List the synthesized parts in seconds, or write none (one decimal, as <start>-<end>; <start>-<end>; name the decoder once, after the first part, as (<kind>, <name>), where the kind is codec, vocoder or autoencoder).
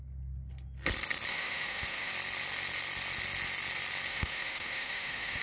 1.3-2.1 (autoencoder, DAC-VAE); 4.1-5.4